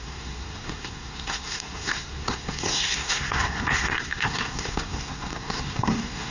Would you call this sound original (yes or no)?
no